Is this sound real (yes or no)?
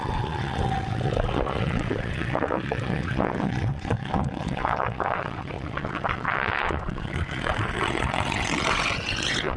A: no